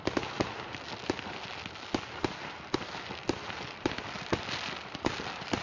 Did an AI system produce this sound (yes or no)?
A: no